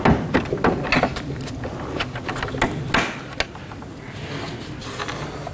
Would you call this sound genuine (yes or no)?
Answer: yes